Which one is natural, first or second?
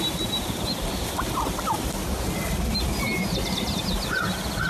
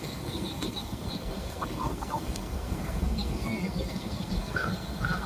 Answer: first